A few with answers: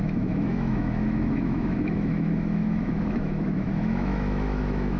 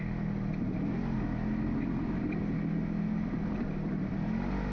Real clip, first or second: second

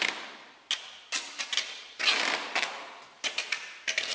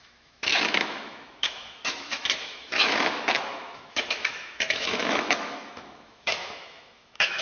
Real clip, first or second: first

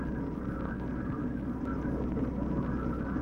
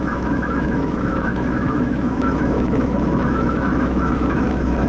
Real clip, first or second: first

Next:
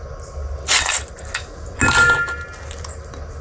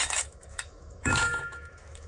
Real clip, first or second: first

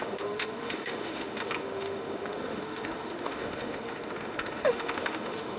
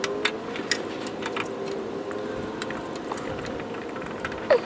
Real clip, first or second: second